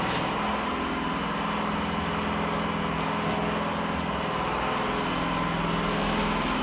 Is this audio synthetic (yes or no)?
no